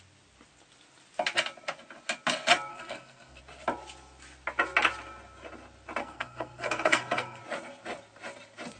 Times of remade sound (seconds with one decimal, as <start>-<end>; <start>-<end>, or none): 2.7-3.4; 6.0-7.4